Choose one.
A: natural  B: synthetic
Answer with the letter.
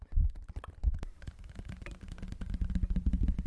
A